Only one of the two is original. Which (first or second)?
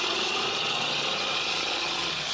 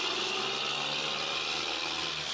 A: second